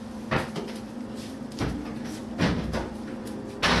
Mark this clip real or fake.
real